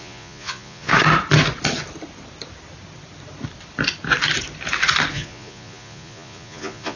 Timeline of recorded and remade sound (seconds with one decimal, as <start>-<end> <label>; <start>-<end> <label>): 0.0-0.9 remade; 0.9-5.1 recorded; 5.1-7.0 remade